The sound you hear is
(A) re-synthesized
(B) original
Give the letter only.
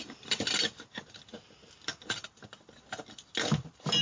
B